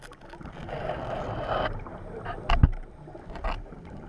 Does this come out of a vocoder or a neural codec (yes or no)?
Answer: no